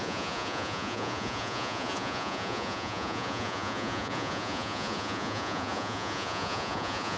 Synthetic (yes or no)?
yes